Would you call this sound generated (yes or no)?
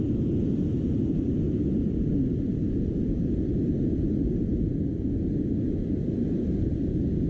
no